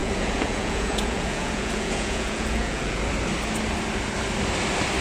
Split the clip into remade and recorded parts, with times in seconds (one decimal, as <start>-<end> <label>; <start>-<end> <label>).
0.0-3.0 remade; 3.0-5.0 recorded